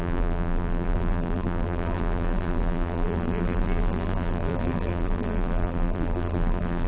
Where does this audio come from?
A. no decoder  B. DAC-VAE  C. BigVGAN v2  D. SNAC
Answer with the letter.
C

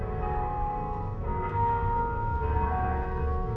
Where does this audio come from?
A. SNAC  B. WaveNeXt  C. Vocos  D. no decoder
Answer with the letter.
A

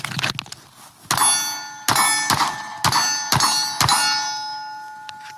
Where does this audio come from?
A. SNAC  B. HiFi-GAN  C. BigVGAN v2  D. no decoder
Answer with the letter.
D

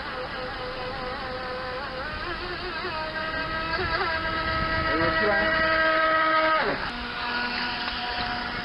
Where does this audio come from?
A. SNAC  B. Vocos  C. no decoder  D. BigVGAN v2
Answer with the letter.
C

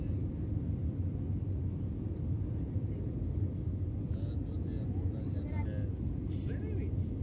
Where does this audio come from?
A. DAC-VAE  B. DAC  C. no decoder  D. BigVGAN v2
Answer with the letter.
C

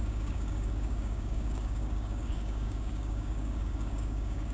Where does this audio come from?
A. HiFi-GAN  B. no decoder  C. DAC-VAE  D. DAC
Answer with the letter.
D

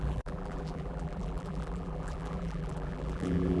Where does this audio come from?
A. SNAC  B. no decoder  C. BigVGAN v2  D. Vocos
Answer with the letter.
C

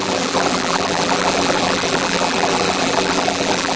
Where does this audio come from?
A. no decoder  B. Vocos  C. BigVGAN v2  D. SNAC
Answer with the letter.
C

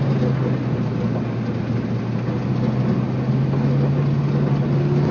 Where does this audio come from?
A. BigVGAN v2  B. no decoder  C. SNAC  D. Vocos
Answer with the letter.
B